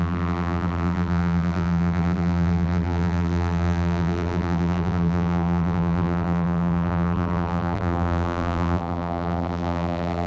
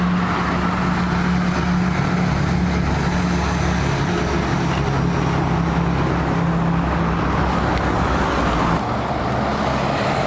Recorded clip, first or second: second